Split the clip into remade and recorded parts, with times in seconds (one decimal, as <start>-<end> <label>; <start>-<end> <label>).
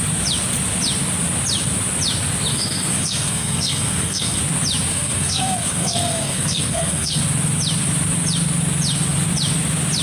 0.0-2.5 recorded; 2.5-4.4 remade; 4.4-4.9 recorded; 4.9-7.2 remade; 7.2-10.0 recorded